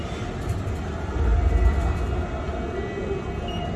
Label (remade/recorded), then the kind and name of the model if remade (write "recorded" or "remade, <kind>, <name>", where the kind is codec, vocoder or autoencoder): recorded